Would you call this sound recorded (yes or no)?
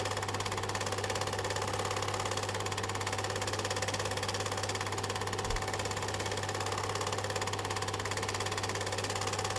yes